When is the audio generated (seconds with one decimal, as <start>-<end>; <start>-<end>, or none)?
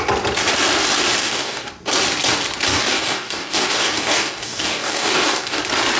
1.2-1.7; 2.7-5.6